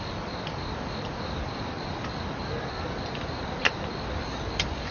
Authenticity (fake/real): real